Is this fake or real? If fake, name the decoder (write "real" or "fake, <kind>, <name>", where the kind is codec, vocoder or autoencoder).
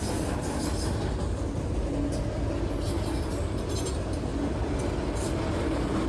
real